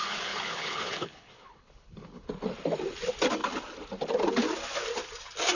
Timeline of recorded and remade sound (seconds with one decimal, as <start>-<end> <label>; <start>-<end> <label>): 0.0-2.3 remade; 2.3-5.6 recorded